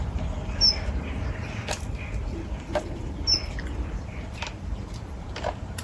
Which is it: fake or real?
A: real